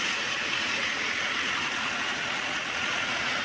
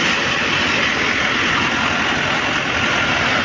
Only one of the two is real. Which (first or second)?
second